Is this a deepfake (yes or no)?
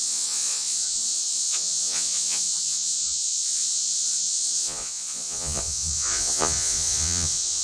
yes